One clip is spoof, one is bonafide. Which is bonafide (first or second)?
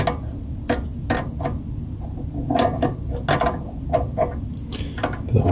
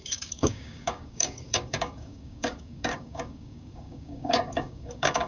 first